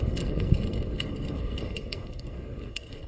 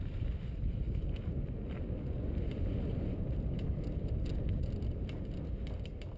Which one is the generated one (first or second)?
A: first